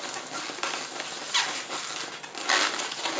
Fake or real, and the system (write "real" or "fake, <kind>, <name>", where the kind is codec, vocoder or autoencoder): real